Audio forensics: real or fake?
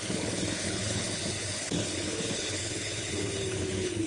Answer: fake